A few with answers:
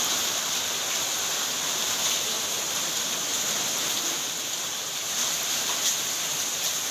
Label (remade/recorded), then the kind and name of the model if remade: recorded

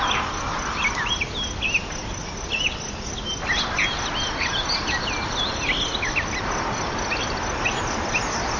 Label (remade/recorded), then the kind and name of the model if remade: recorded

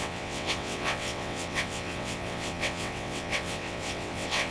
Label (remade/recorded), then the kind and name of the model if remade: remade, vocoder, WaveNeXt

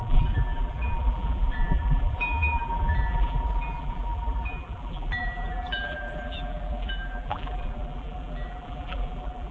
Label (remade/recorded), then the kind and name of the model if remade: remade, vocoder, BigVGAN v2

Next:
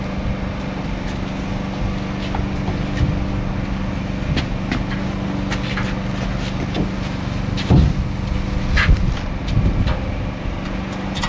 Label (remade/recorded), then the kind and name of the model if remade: recorded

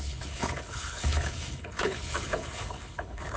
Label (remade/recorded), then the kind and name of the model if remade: remade, codec, HILCodec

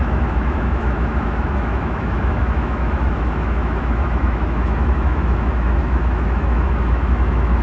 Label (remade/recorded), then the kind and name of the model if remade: remade, autoencoder, DAC-VAE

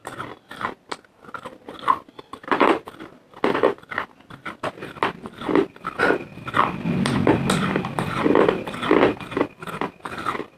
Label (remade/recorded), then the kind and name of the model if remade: recorded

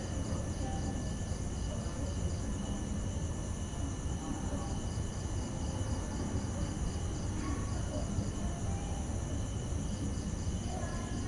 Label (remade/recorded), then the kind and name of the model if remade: recorded